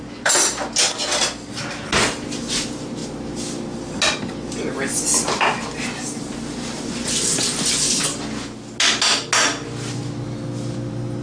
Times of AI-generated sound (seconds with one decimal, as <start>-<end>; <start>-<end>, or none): none